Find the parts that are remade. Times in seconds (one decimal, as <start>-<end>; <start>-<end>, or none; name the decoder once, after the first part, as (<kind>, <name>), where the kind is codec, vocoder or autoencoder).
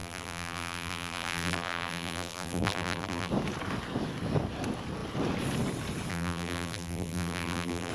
0.0-3.3 (vocoder, BigVGAN v2); 6.1-7.9